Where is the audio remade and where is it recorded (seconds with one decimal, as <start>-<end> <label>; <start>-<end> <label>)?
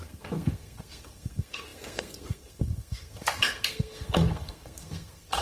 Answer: 0.0-5.4 remade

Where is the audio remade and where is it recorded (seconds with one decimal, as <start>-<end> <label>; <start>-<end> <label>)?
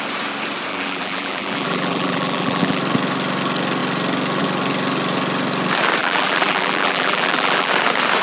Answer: 0.0-0.7 recorded; 0.7-2.8 remade; 2.8-6.0 recorded; 6.0-7.7 remade; 7.7-8.2 recorded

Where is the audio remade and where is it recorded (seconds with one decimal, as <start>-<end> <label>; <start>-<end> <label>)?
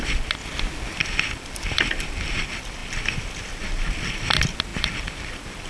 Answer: 0.0-0.4 remade; 0.4-1.0 recorded; 1.0-5.7 remade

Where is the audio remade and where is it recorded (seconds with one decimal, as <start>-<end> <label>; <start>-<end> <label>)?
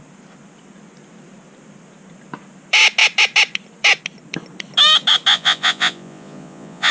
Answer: 0.0-5.3 recorded; 5.3-6.9 remade